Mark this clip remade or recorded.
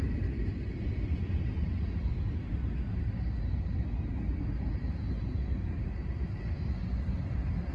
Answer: recorded